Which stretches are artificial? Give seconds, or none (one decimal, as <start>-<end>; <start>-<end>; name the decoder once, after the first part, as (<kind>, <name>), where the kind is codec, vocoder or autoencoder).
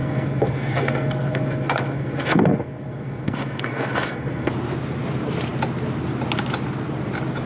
0.0-4.5 (codec, SNAC)